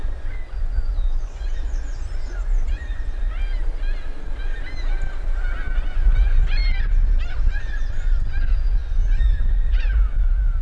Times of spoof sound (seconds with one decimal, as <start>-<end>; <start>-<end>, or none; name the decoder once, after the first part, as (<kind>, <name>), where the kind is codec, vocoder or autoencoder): 0.0-3.4 (vocoder, Vocos); 5.8-6.6; 7.3-10.6